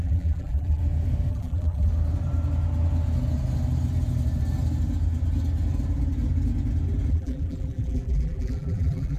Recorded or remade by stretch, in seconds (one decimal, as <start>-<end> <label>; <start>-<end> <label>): 0.0-0.8 remade; 0.8-1.3 recorded; 1.3-1.9 remade; 1.9-7.1 recorded; 7.1-9.2 remade